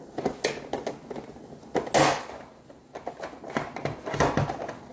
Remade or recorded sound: recorded